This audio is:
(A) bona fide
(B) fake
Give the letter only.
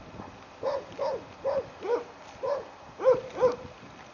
B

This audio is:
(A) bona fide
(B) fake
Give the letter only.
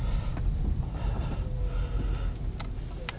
A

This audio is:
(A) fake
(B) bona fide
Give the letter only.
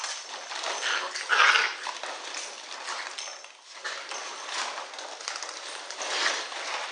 B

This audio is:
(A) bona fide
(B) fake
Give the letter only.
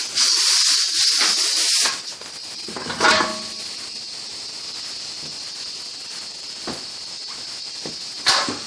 A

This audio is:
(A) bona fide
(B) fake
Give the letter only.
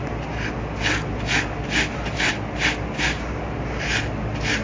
A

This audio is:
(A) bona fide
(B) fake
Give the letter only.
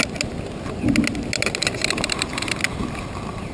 A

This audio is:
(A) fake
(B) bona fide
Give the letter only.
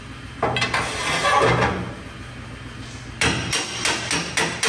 B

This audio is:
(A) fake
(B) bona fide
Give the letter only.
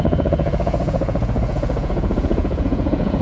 A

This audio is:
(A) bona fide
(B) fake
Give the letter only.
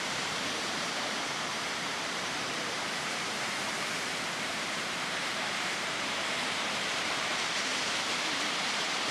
B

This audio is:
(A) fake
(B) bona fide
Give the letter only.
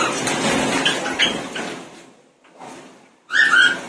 B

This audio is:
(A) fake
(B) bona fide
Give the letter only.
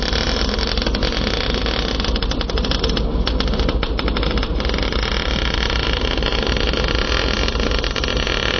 B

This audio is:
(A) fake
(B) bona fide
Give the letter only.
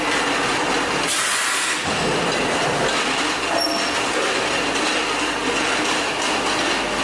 B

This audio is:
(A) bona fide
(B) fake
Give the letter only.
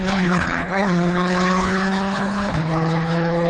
B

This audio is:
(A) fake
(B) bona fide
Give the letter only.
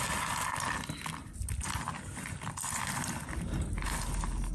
B